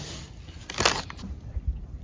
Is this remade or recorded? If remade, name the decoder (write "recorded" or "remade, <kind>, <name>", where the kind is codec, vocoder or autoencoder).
recorded